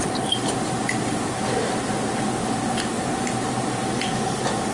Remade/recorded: recorded